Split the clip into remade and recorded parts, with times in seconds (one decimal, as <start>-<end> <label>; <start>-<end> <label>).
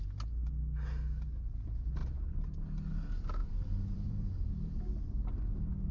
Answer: 0.0-3.4 recorded; 3.4-5.3 remade; 5.3-5.9 recorded